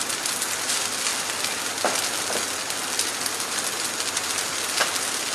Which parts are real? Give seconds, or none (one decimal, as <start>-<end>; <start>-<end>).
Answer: 0.0-5.3

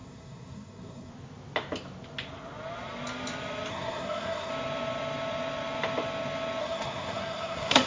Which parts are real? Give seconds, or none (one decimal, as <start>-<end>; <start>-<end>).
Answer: 1.1-3.7; 4.5-6.6